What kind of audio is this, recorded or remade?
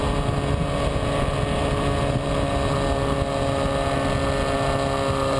recorded